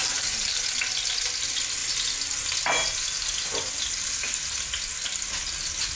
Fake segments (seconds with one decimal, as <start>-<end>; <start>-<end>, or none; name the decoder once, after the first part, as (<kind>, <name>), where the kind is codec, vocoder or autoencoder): 0.0-0.6 (vocoder, BigVGAN v2)